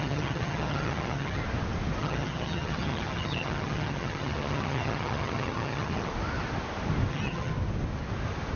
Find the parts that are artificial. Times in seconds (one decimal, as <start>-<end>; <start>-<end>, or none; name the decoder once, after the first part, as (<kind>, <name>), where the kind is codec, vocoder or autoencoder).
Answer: 0.0-1.4 (vocoder, HiFi-GAN); 2.0-6.1; 7.1-7.5